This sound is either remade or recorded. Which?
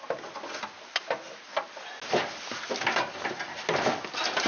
recorded